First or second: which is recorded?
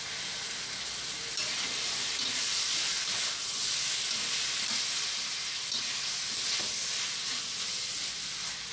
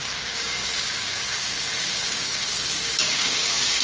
first